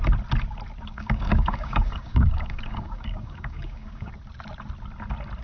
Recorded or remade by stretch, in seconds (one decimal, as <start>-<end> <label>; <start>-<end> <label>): 0.0-0.9 recorded; 0.9-4.1 remade; 4.1-5.4 recorded